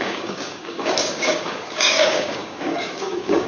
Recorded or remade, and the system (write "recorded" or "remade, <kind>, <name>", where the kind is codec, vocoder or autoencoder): remade, codec, DAC